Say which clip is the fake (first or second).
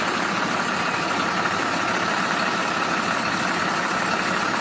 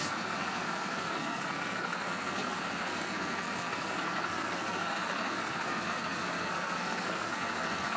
second